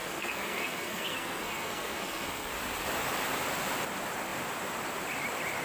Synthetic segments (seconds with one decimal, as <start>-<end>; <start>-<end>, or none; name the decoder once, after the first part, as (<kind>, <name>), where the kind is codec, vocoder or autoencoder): 0.0-2.5 (codec, SNAC)